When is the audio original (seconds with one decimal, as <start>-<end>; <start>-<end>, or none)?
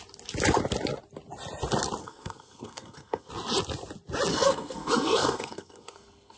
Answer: 0.0-2.0; 3.3-4.3